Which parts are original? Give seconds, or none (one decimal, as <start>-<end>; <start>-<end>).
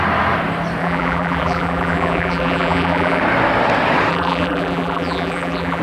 0.0-0.8; 3.2-4.1